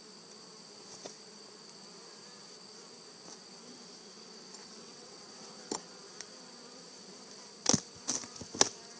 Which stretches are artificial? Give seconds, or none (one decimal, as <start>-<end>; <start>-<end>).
4.6-5.2